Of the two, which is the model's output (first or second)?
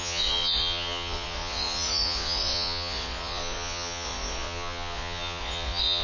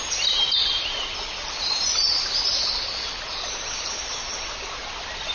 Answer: first